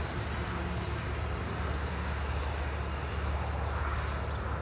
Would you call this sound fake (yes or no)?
no